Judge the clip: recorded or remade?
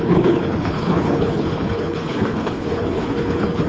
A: remade